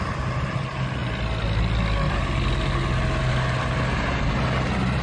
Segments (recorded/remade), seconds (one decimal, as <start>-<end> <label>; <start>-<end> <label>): 0.0-5.0 recorded